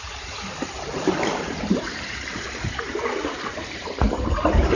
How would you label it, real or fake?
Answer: real